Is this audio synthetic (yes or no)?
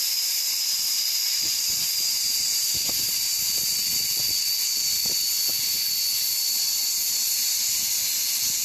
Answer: yes